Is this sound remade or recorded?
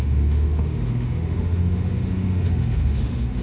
remade